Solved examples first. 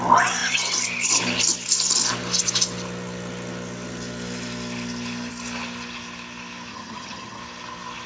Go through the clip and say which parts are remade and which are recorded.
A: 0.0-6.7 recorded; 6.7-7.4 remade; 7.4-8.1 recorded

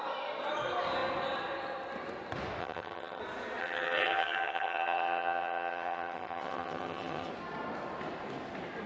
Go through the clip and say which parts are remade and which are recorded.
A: 0.0-2.6 recorded; 2.6-3.2 remade; 3.2-3.6 recorded; 3.6-7.3 remade; 7.3-8.9 recorded

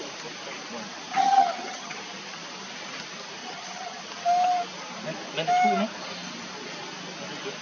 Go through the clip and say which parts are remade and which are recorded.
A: 0.0-1.1 recorded; 1.1-2.0 remade; 2.0-3.4 recorded; 3.4-4.0 remade; 4.0-7.6 recorded

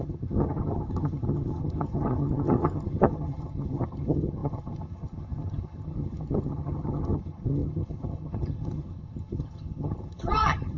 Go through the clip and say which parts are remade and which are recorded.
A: 0.0-10.8 remade

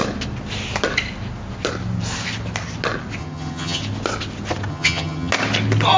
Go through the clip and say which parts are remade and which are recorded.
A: 0.0-3.2 recorded; 3.2-3.8 remade; 3.8-4.7 recorded; 4.7-5.3 remade; 5.3-6.0 recorded

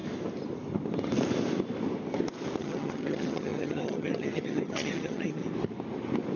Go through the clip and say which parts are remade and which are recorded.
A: 0.0-2.6 recorded; 2.6-5.4 remade; 5.4-6.4 recorded